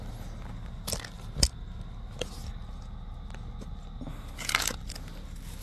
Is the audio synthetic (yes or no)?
no